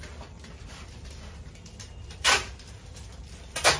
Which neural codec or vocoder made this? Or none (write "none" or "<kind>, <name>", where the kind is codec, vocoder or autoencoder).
vocoder, BigVGAN v2